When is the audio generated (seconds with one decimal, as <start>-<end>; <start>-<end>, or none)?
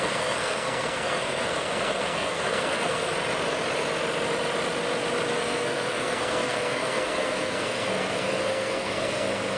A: 0.0-3.1; 5.3-9.6